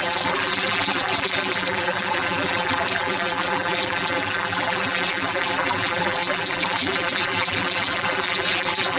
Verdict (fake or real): fake